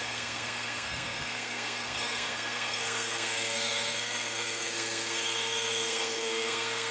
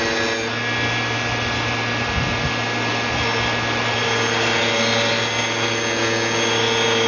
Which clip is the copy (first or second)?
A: first